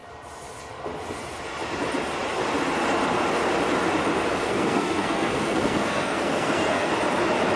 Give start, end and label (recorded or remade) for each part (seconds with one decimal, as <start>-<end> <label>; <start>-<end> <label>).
0.0-4.4 recorded; 4.4-6.9 remade; 6.9-7.6 recorded